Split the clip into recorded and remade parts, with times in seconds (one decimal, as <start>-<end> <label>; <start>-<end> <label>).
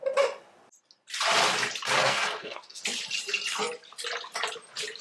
0.0-2.0 recorded; 2.0-2.8 remade; 2.8-5.0 recorded